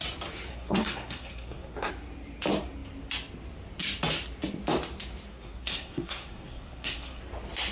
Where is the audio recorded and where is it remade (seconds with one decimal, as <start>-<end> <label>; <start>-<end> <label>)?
0.0-0.5 recorded; 0.5-1.9 remade; 1.9-5.3 recorded; 5.3-7.2 remade; 7.2-7.7 recorded